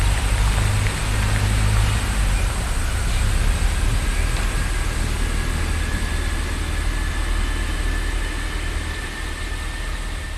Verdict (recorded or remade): recorded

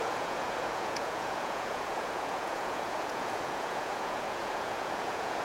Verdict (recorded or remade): remade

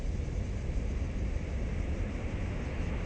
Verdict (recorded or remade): recorded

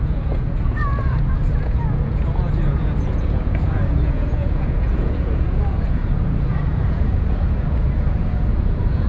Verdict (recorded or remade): remade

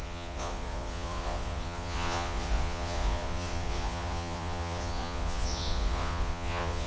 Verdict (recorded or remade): remade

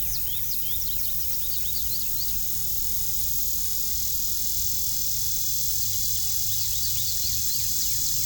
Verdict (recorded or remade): remade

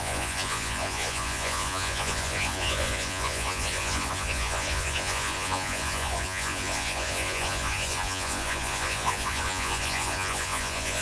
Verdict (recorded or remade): remade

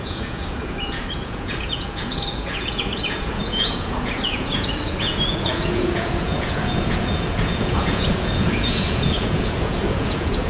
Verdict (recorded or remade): remade